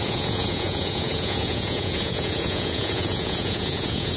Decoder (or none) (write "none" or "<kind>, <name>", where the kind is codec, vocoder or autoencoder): vocoder, Vocos